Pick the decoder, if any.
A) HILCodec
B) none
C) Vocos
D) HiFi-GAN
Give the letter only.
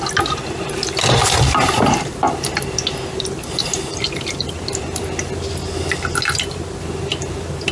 B